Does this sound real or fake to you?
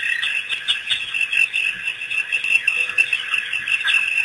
real